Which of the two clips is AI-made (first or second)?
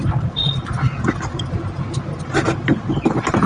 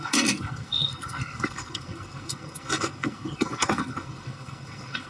second